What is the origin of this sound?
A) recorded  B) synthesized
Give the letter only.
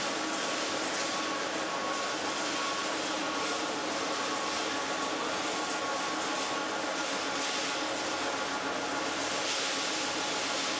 A